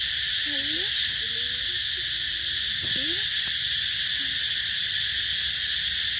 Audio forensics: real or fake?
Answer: real